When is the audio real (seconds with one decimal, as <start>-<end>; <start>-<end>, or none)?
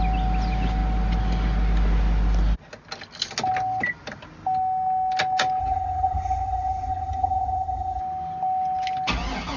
0.0-5.6; 8.0-9.6